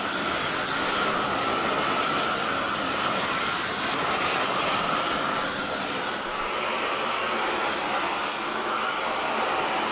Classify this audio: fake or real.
real